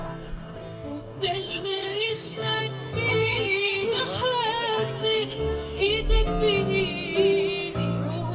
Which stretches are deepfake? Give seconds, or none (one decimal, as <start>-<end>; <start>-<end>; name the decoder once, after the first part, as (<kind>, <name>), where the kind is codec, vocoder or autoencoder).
0.0-2.6 (codec, DAC); 3.1-4.0; 5.0-5.9